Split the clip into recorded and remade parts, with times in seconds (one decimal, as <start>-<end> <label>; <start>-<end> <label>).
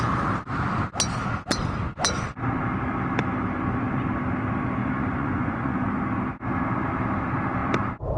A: 0.0-4.8 recorded; 4.8-6.0 remade; 6.0-8.2 recorded